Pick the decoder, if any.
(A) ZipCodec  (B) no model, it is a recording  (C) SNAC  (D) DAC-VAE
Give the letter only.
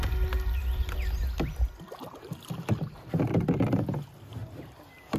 B